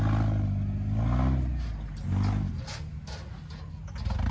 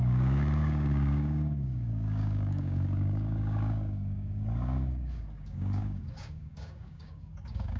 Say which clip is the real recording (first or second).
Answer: first